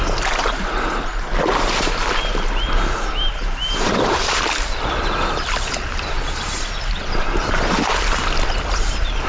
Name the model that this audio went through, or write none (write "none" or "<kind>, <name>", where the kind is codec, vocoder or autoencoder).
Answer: none